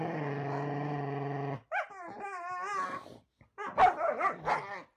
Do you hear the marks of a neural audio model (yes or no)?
no